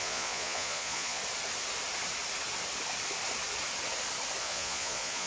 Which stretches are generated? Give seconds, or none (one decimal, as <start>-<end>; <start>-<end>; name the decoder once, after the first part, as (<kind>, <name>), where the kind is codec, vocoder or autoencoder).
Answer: 0.0-1.2 (vocoder, Vocos); 4.4-5.3